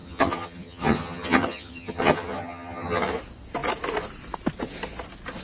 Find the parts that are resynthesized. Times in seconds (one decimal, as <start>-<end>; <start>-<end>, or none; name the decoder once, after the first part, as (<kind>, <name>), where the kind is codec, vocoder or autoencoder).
0.0-3.2 (vocoder, HiFi-GAN)